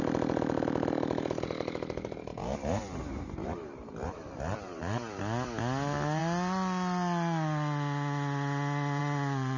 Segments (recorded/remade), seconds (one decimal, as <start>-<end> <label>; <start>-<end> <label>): 0.0-2.3 recorded; 2.3-5.2 remade; 5.2-9.6 recorded